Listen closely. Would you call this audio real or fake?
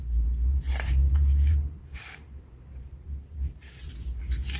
fake